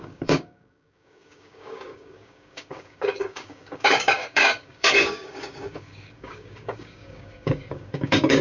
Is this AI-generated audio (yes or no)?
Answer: yes